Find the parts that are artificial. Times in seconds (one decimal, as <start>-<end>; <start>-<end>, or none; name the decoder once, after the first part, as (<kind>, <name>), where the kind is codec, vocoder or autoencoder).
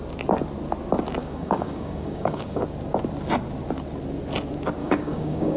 1.2-2.6 (codec, DAC); 4.8-5.6